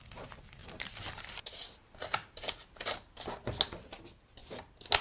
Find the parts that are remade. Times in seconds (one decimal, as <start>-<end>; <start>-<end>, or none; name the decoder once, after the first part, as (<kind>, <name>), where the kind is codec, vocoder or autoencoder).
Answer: 0.6-2.5 (vocoder, BigVGAN v2)